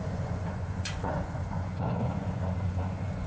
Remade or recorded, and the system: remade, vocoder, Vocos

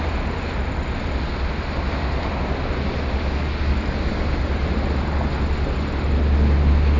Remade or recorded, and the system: recorded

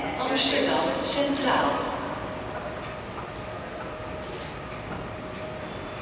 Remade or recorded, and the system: recorded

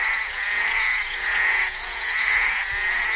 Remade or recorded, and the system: remade, vocoder, Vocos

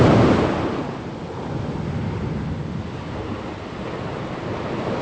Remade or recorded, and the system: recorded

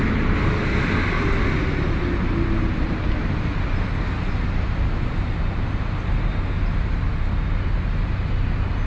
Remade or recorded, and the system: recorded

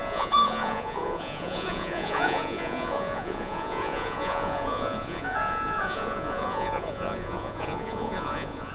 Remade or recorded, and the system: remade, vocoder, Vocos